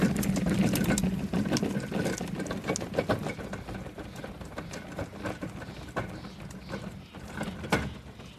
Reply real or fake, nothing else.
real